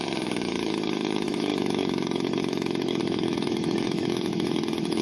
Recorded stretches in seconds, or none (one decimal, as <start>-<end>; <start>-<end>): none